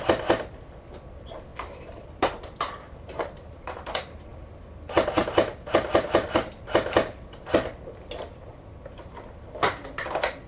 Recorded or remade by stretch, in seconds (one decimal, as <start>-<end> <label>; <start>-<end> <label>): 0.0-1.5 recorded; 1.5-3.1 remade; 3.1-4.3 recorded; 4.3-6.6 remade; 6.6-10.5 recorded